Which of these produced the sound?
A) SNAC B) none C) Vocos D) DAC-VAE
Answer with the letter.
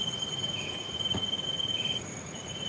C